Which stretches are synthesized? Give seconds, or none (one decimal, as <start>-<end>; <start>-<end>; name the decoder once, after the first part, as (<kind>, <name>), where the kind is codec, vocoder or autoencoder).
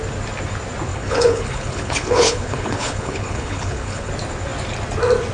0.9-4.1 (codec, HILCodec)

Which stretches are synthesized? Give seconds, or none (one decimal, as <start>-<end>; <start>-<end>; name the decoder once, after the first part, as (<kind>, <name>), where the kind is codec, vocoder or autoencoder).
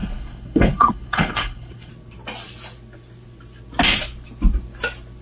0.0-1.9 (codec, HILCodec)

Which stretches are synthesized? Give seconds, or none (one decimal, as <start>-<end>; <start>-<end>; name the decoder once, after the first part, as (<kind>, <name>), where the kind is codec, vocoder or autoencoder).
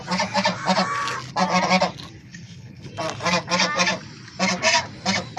2.2-2.9 (codec, HILCodec)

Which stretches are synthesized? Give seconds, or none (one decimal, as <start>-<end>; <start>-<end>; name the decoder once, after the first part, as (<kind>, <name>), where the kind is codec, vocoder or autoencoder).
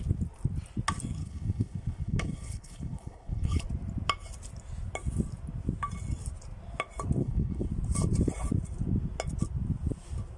1.2-3.6 (codec, HILCodec); 7.2-7.7